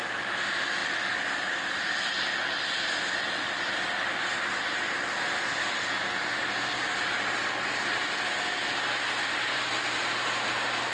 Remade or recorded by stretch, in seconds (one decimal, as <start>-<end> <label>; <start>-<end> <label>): 0.0-9.2 recorded; 9.2-10.0 remade; 10.0-10.9 recorded